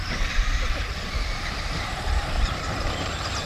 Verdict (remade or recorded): remade